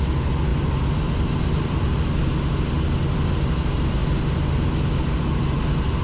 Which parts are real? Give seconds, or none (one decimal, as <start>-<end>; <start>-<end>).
0.0-0.5; 2.4-6.0